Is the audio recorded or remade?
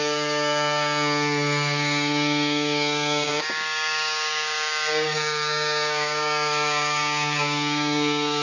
remade